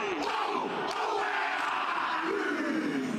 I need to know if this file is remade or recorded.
recorded